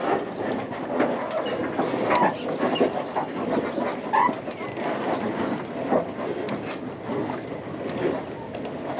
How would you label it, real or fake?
real